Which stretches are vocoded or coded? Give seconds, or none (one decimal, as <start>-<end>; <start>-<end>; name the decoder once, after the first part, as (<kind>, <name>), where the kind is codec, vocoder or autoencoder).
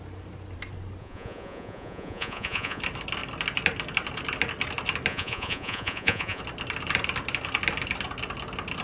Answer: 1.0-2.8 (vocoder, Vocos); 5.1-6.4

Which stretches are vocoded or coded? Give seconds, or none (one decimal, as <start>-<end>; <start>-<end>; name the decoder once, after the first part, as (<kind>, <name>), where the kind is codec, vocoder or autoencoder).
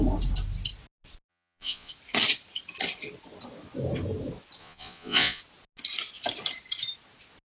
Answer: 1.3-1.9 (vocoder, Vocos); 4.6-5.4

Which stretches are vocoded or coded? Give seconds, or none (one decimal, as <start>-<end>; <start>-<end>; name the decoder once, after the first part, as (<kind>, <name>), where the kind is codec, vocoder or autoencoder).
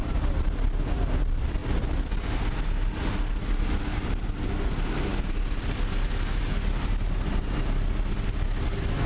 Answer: none